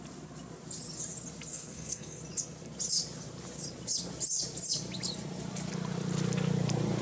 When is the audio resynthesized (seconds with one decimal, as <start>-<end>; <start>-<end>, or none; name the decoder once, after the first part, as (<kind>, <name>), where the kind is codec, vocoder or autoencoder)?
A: 1.5-2.2 (codec, SNAC)